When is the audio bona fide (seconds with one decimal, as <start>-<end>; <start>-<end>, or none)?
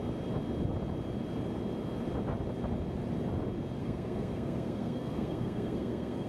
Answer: 0.0-3.8